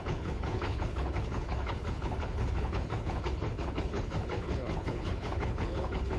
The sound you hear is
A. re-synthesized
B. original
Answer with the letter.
A